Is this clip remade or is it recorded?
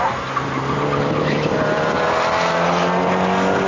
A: recorded